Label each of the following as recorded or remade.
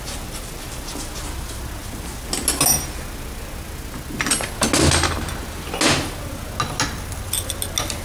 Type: recorded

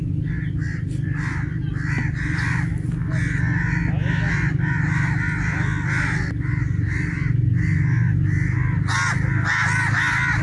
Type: recorded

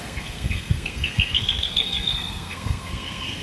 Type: remade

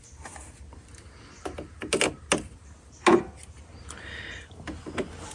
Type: recorded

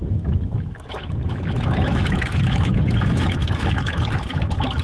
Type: remade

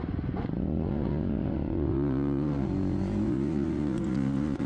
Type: remade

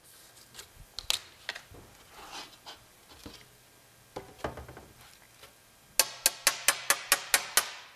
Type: recorded